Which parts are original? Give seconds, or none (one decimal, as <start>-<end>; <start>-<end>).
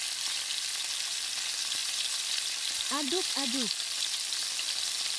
0.0-1.8; 3.7-5.2